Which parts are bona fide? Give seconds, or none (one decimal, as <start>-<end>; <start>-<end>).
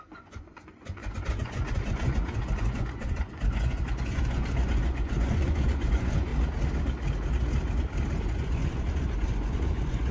6.3-8.2